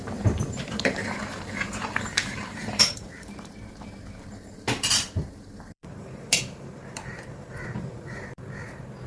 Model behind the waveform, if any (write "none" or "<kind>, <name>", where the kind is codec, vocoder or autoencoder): vocoder, BigVGAN v2